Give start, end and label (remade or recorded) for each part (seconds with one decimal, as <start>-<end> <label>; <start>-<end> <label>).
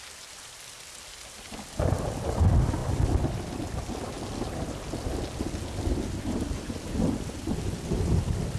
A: 0.0-8.6 recorded